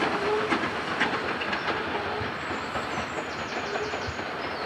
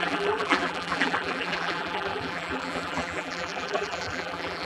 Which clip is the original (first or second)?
first